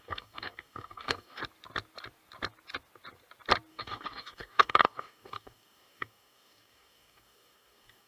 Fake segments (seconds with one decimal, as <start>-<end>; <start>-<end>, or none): 0.0-1.4; 3.7-8.1